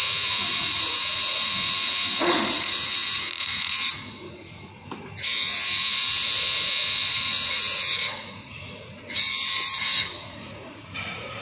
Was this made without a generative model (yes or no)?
no